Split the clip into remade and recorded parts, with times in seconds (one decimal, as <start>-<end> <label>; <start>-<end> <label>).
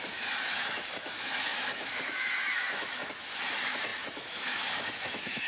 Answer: 0.0-5.5 remade